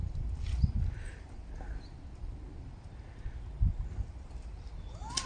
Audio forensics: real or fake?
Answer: real